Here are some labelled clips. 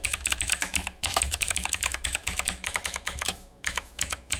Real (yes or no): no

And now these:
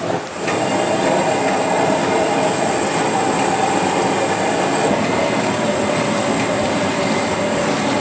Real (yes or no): yes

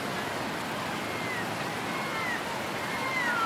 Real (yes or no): yes